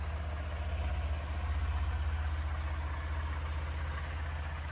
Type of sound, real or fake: real